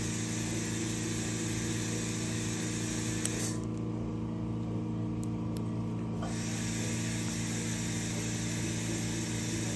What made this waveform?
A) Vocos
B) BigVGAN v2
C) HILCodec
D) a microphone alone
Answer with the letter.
D